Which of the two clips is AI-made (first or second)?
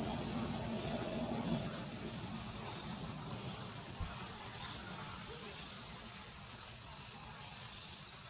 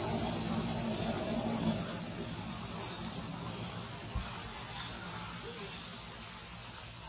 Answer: first